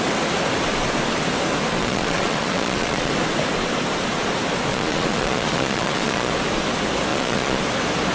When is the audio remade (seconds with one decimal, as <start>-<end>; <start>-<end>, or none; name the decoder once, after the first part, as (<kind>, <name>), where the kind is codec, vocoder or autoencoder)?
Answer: 1.8-3.1 (vocoder, Vocos); 4.7-6.3; 7.1-7.6